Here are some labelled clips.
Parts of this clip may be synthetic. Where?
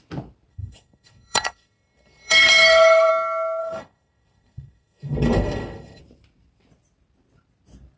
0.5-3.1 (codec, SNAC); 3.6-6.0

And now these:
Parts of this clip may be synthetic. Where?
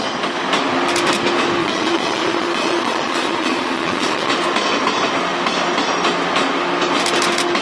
1.6-4.3 (vocoder, Vocos)